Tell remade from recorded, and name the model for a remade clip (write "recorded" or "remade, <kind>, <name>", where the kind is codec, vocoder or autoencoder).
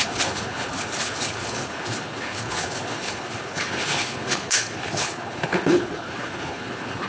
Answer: remade, codec, HILCodec